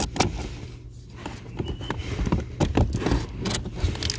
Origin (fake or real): real